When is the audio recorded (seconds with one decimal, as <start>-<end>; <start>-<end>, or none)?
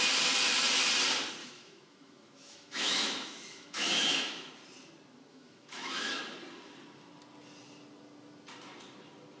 0.0-1.4; 4.5-5.3; 6.1-9.4